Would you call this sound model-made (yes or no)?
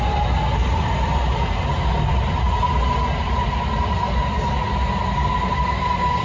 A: no